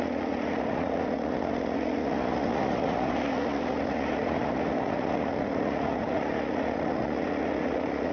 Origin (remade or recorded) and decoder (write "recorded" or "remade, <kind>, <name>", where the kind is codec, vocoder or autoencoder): remade, vocoder, Vocos